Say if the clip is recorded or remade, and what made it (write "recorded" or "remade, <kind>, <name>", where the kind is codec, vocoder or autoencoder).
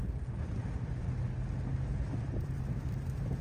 recorded